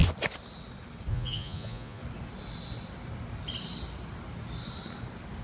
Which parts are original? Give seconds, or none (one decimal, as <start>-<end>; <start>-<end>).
0.0-1.1; 2.0-5.4